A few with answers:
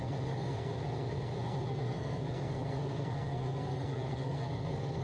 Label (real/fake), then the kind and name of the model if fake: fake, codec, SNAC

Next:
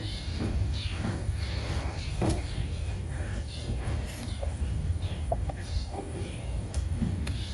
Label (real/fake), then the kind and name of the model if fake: fake, codec, DAC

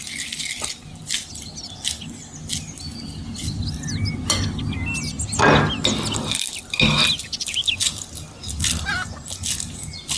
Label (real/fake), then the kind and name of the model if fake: real